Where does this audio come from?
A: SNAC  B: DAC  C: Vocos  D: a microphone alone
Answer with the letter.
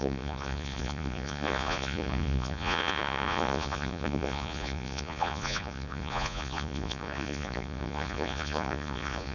C